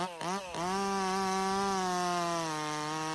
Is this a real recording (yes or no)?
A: yes